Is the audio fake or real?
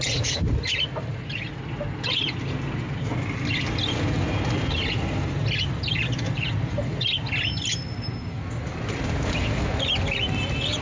real